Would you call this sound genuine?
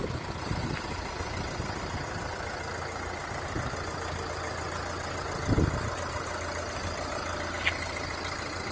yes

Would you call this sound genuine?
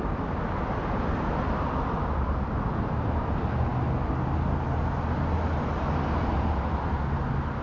yes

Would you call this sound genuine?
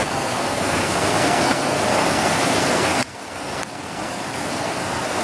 no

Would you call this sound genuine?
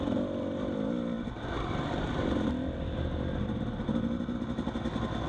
yes